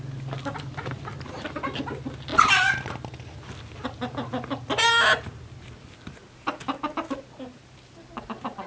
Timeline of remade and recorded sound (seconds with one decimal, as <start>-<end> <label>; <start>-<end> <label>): 0.0-8.7 recorded